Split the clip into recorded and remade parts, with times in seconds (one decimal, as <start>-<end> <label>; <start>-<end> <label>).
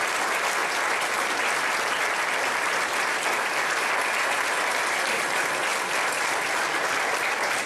0.0-7.7 recorded